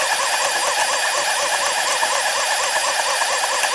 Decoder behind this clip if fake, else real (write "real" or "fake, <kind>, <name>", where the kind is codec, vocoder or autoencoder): real